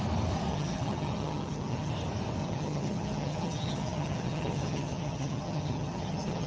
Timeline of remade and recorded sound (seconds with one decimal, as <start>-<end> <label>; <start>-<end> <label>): 0.0-0.5 recorded; 0.5-1.9 remade; 1.9-2.4 recorded; 2.4-6.5 remade